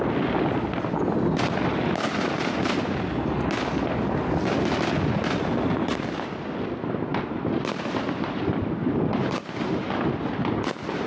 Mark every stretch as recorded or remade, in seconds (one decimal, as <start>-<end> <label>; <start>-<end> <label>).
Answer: 0.0-7.1 recorded; 7.1-9.5 remade; 9.5-11.1 recorded